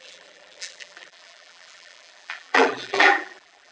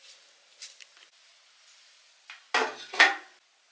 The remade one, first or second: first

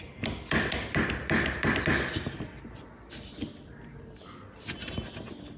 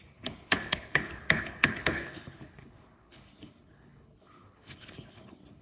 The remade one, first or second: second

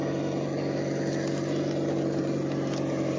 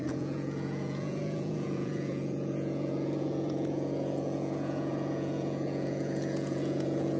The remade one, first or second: second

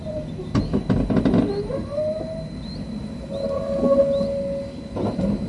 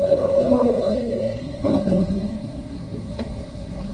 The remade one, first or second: second